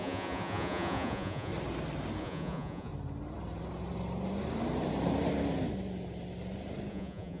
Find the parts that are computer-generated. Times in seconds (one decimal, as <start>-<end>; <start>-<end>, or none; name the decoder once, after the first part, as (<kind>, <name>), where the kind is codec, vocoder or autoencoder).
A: 0.0-1.5 (vocoder, Vocos); 2.2-2.9; 6.9-7.4